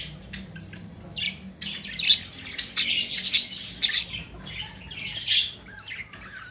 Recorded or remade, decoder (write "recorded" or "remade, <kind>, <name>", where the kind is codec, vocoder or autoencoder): recorded